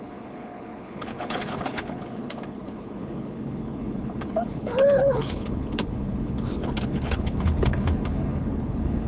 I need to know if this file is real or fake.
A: fake